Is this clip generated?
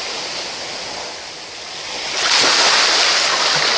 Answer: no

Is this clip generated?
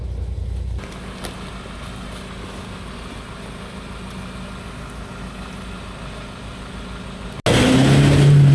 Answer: no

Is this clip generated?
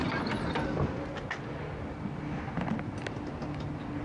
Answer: no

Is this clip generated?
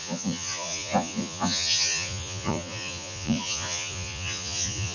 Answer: yes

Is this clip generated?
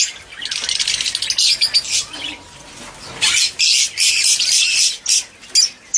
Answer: no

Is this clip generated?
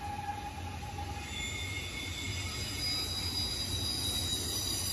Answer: no